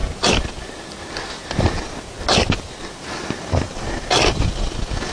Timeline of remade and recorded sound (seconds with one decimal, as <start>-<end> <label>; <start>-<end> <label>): 0.0-5.1 recorded